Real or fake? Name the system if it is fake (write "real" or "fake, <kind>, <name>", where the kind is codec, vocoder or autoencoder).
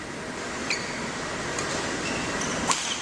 real